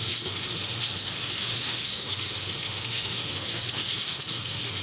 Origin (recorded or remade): remade